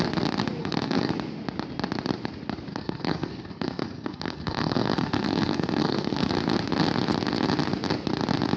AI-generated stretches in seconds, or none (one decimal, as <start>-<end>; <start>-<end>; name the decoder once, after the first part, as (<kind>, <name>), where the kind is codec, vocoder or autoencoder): 0.6-1.1 (codec, SNAC); 2.7-6.3